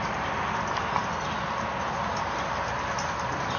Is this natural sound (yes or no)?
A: yes